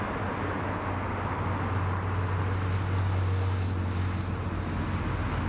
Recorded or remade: recorded